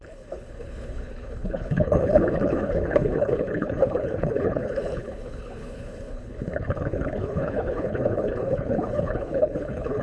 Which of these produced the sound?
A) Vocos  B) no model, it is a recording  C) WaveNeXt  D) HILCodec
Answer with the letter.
D